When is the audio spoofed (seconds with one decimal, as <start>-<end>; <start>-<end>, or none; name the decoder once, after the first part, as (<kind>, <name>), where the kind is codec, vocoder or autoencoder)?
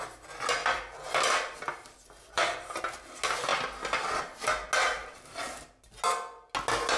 0.6-2.8 (vocoder, BigVGAN v2); 5.0-5.7